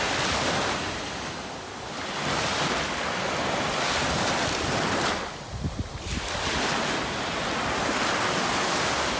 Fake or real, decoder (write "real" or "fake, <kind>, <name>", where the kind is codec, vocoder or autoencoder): real